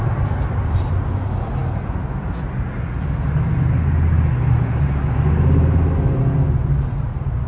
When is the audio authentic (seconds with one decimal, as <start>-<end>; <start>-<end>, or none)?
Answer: 0.0-7.5